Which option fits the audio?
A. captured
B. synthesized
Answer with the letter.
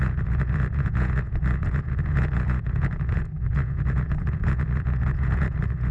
B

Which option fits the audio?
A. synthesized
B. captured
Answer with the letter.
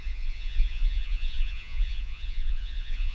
A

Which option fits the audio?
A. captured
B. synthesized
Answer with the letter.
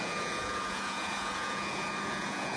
B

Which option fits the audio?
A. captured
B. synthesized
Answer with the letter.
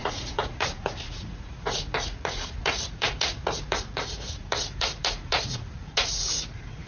B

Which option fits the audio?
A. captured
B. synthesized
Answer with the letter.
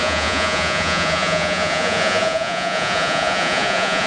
B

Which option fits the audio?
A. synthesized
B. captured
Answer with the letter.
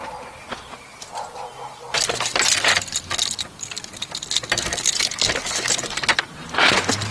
B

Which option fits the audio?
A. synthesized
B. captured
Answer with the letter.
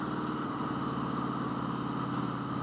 B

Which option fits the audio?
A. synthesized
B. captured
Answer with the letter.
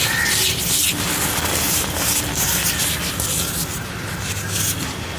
B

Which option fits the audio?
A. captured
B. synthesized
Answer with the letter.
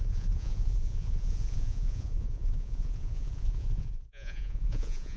B